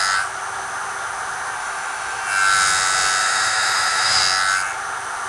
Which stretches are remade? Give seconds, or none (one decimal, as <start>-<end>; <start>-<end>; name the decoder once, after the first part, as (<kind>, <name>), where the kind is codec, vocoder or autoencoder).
1.6-2.2 (autoencoder, DAC-VAE); 3.2-4.2